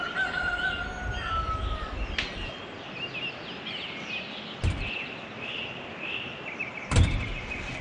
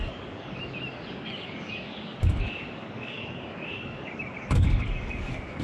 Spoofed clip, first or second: second